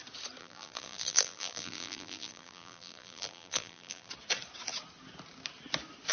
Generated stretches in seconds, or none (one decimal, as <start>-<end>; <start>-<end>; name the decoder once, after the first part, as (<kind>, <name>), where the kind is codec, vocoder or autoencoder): 0.4-4.1 (vocoder, BigVGAN v2)